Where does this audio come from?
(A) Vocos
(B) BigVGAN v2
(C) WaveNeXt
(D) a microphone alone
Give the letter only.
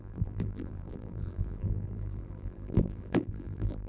B